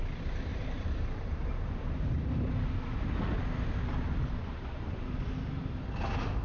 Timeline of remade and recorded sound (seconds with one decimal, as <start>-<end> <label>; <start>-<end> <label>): 0.0-0.5 recorded; 0.5-2.5 remade; 2.5-4.4 recorded; 4.4-5.0 remade; 5.0-6.4 recorded